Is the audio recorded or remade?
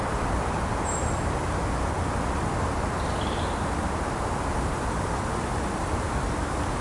recorded